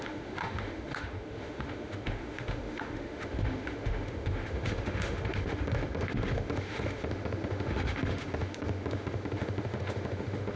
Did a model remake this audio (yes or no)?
yes